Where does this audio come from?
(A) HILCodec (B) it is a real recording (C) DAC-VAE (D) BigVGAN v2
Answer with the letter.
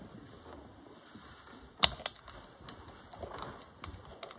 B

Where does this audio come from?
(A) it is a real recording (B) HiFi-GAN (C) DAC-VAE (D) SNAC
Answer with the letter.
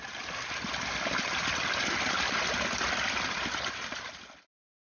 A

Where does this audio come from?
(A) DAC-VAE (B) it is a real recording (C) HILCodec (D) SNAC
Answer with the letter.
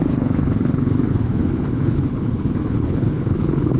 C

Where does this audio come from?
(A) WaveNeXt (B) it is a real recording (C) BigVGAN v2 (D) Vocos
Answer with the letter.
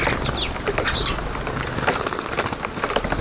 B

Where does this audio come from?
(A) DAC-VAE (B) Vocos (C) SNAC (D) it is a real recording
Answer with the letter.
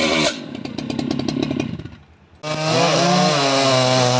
D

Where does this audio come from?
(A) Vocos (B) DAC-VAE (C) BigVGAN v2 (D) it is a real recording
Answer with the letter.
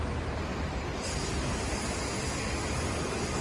D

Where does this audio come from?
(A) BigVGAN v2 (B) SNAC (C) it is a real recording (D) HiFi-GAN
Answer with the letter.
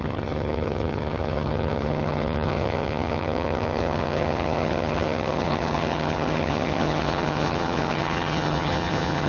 D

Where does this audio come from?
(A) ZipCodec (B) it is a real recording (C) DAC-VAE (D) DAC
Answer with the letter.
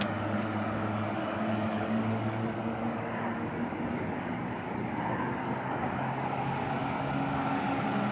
D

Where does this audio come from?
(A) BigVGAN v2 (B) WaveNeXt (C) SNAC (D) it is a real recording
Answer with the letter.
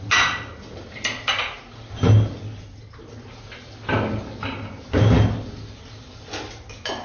D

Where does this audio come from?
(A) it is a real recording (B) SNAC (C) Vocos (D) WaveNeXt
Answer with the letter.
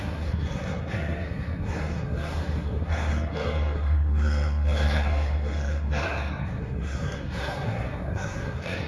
B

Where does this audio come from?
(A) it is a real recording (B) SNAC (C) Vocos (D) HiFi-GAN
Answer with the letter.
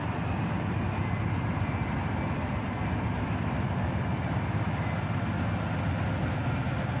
A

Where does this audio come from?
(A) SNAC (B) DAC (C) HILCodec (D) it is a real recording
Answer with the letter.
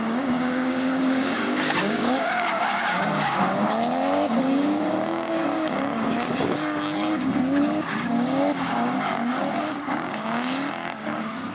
B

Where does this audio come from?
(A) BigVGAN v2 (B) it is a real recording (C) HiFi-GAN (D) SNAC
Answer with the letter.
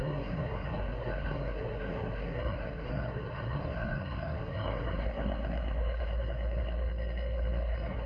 D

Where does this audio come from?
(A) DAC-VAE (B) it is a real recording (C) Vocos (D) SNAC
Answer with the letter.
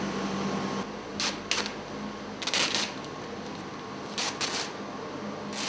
B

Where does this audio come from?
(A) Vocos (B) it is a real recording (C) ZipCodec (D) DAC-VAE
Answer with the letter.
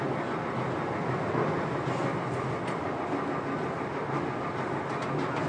B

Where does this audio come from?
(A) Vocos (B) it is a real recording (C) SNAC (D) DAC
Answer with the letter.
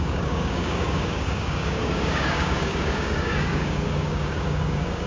D